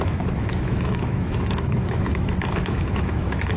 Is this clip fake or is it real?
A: fake